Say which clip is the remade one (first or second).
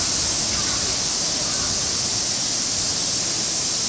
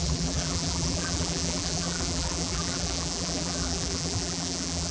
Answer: second